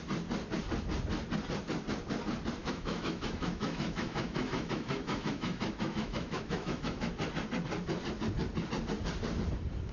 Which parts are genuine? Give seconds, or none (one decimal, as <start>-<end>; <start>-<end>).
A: 0.0-2.6; 7.1-9.9